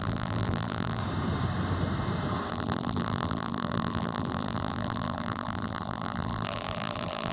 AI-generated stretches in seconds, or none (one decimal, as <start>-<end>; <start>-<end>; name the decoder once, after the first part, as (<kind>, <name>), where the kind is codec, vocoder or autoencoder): 0.0-1.0 (vocoder, BigVGAN v2); 2.5-7.3